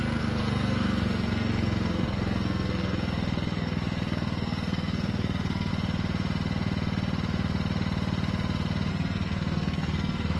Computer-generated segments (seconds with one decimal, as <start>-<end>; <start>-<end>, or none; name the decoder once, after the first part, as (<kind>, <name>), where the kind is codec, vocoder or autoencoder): 0.0-5.7 (codec, SNAC); 8.9-10.4